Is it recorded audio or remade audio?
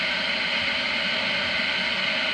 recorded